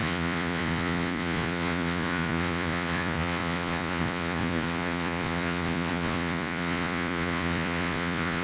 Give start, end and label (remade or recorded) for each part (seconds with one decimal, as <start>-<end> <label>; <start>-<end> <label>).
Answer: 0.0-8.4 remade

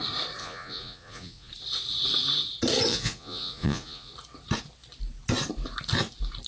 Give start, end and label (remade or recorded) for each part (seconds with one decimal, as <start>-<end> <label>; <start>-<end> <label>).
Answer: 0.0-0.4 recorded; 0.4-1.5 remade; 1.5-2.9 recorded; 2.9-4.1 remade; 4.1-6.5 recorded

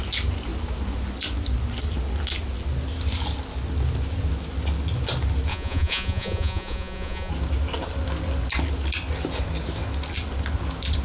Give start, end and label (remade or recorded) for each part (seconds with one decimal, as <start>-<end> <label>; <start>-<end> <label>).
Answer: 0.0-5.5 recorded; 5.5-7.3 remade; 7.3-11.0 recorded